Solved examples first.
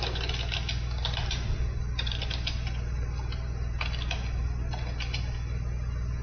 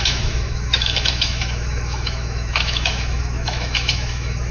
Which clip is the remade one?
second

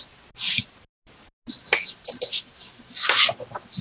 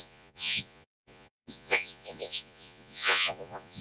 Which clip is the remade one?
second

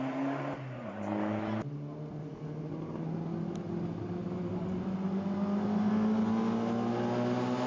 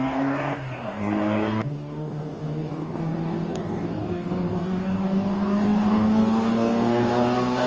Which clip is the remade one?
second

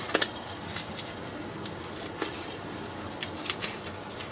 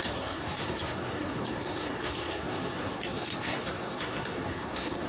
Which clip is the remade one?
second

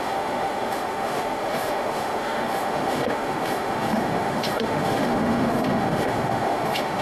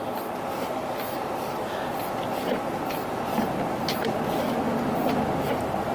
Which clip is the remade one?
first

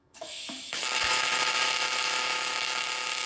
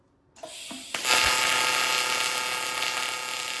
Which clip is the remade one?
first